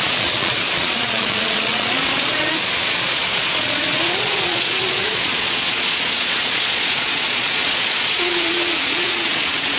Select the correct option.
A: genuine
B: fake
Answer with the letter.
B